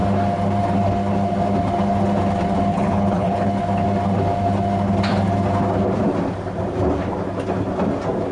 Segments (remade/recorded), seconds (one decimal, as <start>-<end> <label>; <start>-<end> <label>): 0.0-2.7 recorded; 2.7-3.5 remade; 3.5-8.3 recorded